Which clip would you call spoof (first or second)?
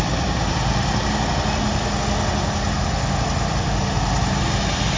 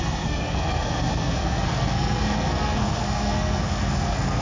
second